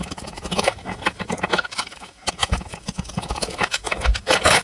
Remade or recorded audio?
remade